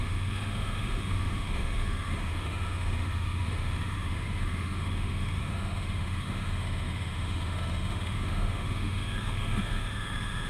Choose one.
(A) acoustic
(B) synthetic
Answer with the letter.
B